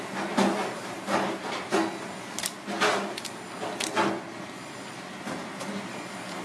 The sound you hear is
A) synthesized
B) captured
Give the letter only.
B